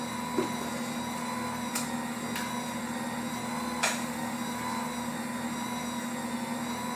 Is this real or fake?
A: real